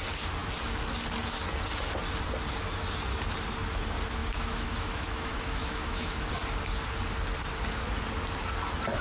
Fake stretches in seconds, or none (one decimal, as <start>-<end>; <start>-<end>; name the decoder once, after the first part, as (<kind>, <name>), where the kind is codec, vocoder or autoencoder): 4.2-6.3 (autoencoder, DAC-VAE)